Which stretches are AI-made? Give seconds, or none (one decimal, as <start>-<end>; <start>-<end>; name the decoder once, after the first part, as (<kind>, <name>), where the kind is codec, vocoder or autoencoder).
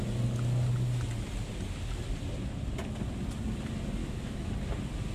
4.0-4.5 (autoencoder, DAC-VAE)